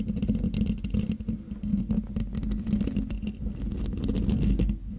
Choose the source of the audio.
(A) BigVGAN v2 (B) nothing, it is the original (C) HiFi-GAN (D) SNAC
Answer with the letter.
B